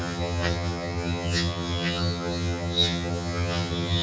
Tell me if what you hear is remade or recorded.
remade